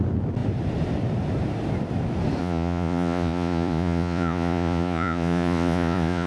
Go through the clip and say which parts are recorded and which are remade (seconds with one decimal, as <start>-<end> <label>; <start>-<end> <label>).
0.0-2.4 recorded; 2.4-6.3 remade

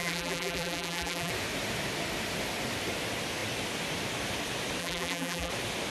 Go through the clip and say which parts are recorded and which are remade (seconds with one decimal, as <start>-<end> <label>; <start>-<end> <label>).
0.0-1.3 remade; 1.3-4.8 recorded; 4.8-5.5 remade; 5.5-5.9 recorded

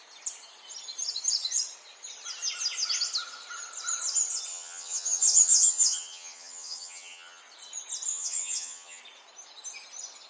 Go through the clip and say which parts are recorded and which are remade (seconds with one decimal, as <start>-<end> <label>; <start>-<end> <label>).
0.0-4.5 recorded; 4.5-7.4 remade; 7.4-8.1 recorded; 8.1-9.0 remade; 9.0-10.3 recorded

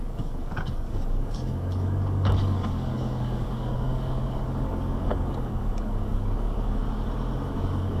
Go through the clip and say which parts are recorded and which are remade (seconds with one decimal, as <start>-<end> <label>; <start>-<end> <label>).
0.0-6.8 remade; 6.8-7.5 recorded; 7.5-8.0 remade

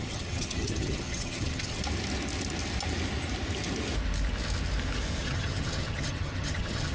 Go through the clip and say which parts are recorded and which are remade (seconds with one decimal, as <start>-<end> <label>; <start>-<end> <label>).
0.0-1.8 remade; 1.8-5.2 recorded; 5.2-6.9 remade

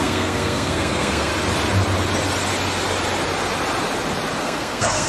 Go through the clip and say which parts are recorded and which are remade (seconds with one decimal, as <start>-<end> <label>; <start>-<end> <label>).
0.0-1.3 remade; 1.3-4.4 recorded; 4.4-5.1 remade

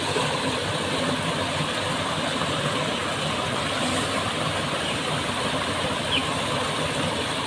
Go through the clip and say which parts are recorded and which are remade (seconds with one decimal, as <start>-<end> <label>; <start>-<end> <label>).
0.0-7.5 recorded

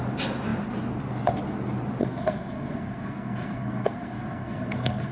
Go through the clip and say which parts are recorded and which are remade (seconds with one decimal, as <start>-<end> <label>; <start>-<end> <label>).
0.0-2.0 recorded; 2.0-5.1 remade